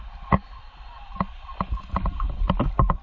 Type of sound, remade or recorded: recorded